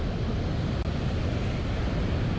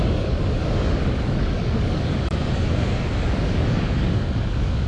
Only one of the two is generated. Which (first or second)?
second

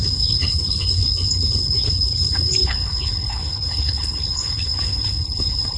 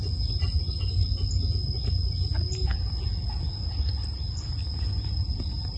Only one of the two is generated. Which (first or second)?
first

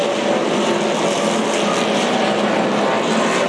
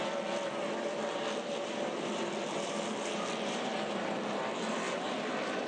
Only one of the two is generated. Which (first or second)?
second